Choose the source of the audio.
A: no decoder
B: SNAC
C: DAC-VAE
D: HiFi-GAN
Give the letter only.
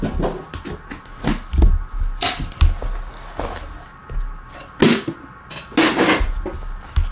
A